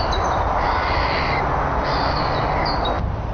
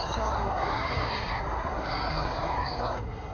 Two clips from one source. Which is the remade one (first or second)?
second